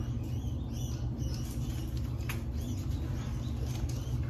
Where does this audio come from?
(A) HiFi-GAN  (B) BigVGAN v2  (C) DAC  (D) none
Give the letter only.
D